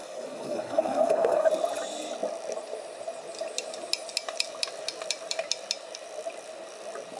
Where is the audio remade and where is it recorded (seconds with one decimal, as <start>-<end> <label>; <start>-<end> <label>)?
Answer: 0.0-1.5 remade; 1.5-7.2 recorded